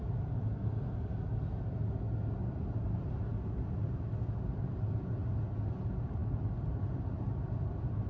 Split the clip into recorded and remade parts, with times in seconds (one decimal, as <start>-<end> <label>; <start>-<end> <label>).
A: 0.0-8.1 recorded